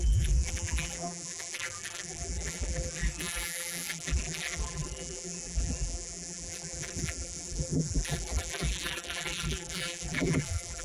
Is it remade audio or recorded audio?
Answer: remade